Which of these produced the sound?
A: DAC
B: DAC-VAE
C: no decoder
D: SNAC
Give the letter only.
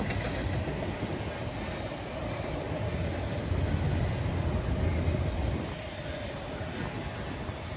C